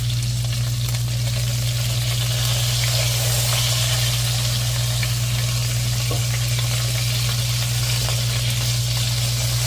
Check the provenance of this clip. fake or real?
real